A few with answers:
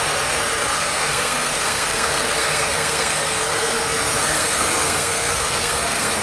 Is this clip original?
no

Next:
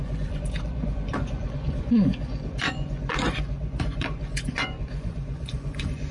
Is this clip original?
no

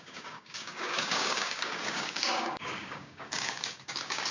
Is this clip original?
no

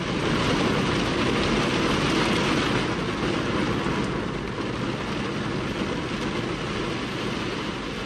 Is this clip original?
yes